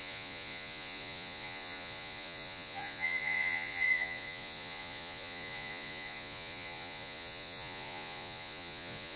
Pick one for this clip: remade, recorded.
remade